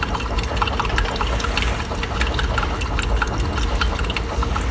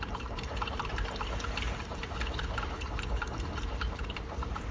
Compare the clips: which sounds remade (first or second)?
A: second